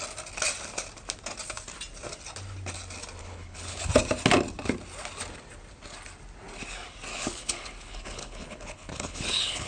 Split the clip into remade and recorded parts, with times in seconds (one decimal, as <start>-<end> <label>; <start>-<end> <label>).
0.0-3.2 recorded; 3.2-3.9 remade; 3.9-7.1 recorded; 7.1-9.7 remade